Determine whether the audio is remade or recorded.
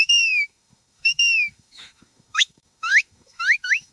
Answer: remade